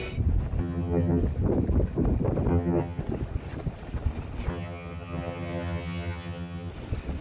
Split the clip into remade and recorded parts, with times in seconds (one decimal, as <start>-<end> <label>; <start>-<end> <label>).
0.0-0.6 recorded; 0.6-1.2 remade; 1.2-2.5 recorded; 2.5-3.0 remade; 3.0-4.5 recorded; 4.5-6.7 remade; 6.7-7.2 recorded